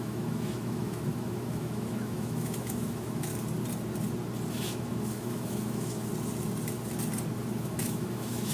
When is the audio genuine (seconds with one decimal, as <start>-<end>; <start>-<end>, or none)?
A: 3.3-4.5; 6.1-7.6